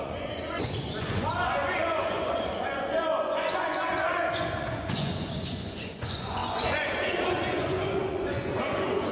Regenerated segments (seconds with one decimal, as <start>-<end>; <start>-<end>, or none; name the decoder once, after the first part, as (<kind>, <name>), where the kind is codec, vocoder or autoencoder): 0.0-9.1 (vocoder, Vocos)